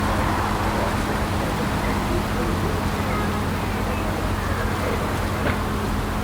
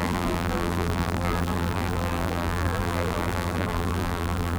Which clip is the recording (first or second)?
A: first